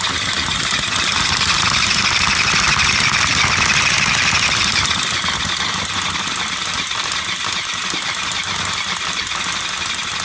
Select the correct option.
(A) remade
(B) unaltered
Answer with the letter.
B